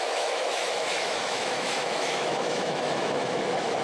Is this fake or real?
fake